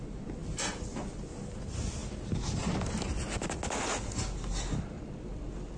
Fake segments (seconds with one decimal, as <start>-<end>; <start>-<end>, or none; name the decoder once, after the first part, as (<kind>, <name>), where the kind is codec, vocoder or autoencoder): none